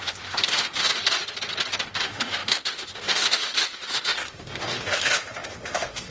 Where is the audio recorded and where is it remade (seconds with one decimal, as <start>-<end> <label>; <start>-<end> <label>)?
0.0-1.0 remade; 1.0-1.8 recorded; 1.8-6.1 remade